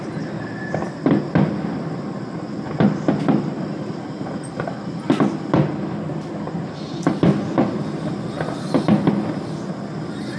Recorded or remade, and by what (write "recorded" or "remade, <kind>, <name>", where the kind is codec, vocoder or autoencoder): recorded